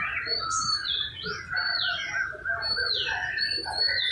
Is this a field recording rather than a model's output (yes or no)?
yes